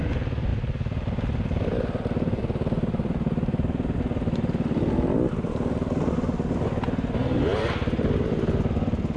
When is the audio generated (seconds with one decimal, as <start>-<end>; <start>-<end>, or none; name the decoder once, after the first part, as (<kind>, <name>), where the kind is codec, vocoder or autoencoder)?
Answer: 0.5-5.3 (vocoder, BigVGAN v2); 7.5-8.2